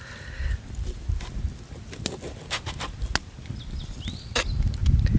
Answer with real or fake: real